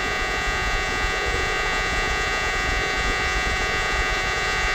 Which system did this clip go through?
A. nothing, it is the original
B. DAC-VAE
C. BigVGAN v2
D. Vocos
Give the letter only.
D